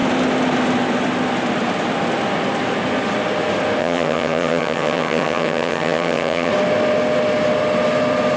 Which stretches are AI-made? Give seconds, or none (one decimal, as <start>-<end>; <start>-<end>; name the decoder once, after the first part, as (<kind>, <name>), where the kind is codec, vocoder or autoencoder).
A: 3.8-6.5 (vocoder, HiFi-GAN)